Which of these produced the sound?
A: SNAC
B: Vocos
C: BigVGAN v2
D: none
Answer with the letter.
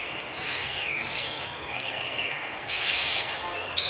A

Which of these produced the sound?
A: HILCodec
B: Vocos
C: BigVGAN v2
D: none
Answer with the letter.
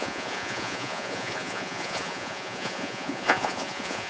B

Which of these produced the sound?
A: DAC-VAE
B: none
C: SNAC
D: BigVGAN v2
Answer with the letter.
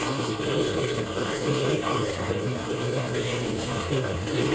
C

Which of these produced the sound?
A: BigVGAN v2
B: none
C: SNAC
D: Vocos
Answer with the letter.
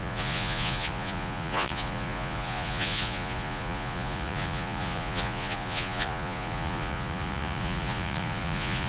D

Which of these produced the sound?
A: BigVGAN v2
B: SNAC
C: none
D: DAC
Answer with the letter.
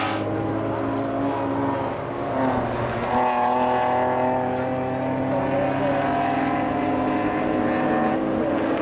C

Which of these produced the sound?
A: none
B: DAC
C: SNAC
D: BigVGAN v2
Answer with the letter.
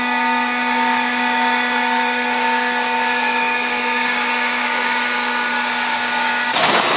B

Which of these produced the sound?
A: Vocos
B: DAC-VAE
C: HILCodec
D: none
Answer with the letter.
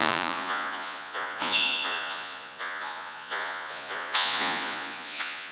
A